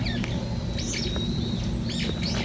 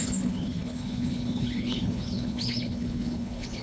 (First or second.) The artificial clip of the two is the second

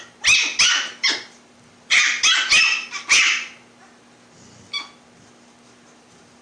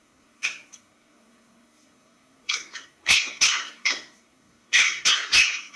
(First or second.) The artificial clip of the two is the second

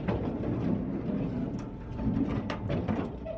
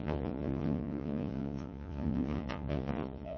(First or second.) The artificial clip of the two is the second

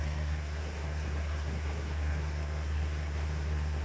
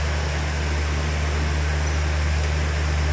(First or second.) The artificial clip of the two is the first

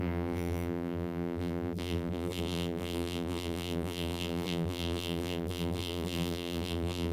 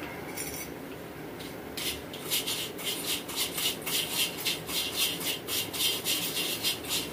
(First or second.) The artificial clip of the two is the first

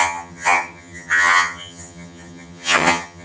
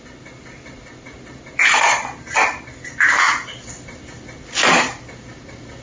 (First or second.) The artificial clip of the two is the first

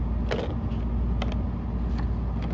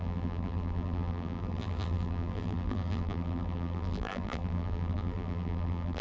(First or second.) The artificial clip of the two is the second